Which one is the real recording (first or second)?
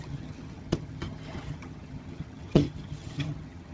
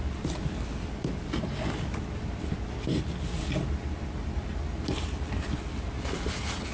second